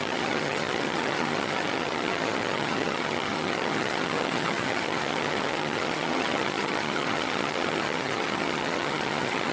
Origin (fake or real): fake